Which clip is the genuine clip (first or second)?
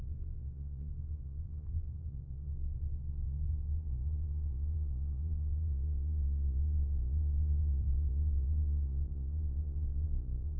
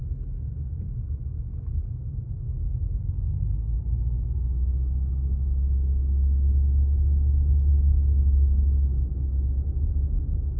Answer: second